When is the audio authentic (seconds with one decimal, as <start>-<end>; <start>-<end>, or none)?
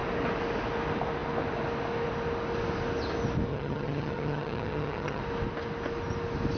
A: 0.0-3.5; 5.2-6.6